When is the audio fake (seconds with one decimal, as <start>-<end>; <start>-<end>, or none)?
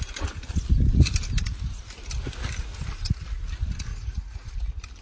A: 3.9-4.5